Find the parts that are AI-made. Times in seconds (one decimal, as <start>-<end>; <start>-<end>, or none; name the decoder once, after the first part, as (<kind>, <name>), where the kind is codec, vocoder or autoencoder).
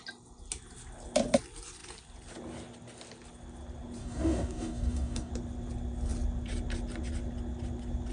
4.0-5.3 (codec, DAC)